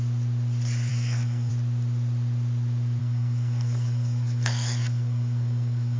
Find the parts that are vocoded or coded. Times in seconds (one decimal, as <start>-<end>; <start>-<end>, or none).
0.9-1.5; 3.0-6.0